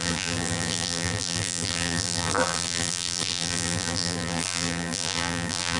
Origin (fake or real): fake